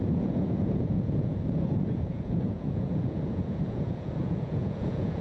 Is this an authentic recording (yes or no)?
no